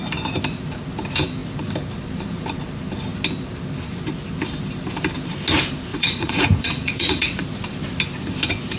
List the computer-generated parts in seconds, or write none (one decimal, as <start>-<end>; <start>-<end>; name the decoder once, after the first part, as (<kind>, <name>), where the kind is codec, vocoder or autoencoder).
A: 5.9-7.4 (vocoder, Vocos)